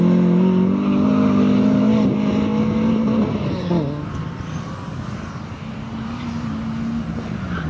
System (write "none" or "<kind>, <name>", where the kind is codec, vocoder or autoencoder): none